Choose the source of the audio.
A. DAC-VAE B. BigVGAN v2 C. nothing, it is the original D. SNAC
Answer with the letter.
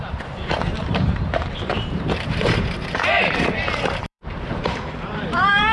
B